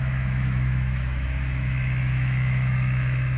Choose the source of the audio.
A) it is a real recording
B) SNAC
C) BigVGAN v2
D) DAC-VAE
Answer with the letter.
D